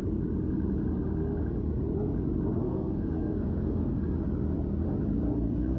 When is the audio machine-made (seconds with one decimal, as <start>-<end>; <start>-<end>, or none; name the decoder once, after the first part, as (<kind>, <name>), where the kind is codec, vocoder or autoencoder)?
2.6-4.0 (codec, SNAC)